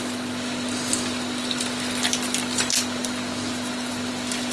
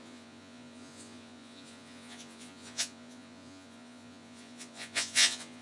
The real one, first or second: first